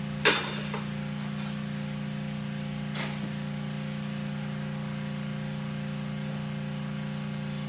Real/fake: real